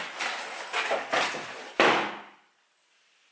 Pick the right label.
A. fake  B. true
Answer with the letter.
B